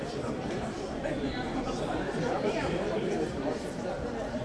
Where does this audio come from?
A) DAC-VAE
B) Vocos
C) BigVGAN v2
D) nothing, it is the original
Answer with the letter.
C